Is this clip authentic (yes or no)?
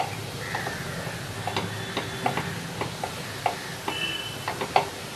yes